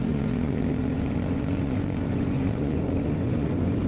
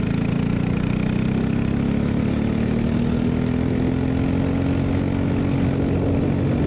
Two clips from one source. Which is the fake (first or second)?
first